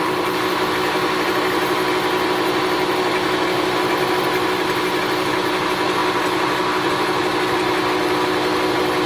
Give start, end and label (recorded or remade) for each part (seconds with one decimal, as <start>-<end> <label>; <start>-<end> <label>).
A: 0.0-9.1 recorded